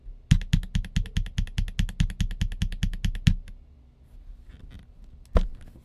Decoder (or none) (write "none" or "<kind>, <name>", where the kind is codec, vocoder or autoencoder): none